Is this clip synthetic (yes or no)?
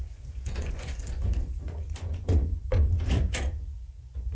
yes